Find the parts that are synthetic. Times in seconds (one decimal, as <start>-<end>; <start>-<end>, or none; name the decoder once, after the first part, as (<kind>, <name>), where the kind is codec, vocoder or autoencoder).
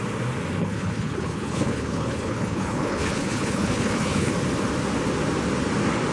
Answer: 0.6-4.3 (codec, HILCodec)